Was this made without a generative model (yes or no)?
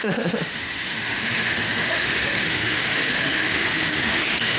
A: no